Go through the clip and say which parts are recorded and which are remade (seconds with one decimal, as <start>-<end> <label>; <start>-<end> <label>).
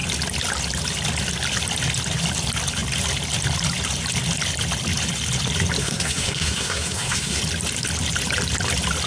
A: 0.0-5.8 recorded; 5.8-7.4 remade; 7.4-9.1 recorded